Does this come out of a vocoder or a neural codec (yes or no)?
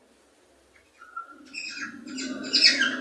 no